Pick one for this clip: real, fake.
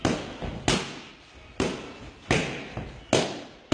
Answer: real